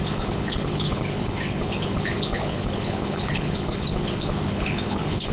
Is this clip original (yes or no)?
no